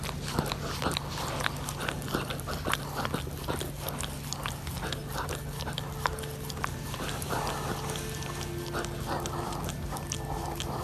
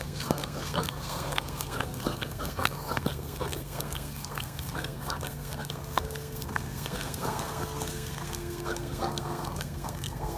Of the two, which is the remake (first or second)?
second